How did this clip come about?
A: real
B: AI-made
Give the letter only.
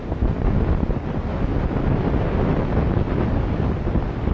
A